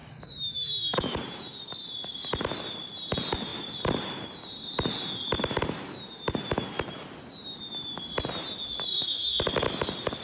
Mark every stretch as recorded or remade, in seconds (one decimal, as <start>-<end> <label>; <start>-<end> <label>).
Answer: 0.0-1.2 remade; 1.2-8.9 recorded; 8.9-9.4 remade; 9.4-10.2 recorded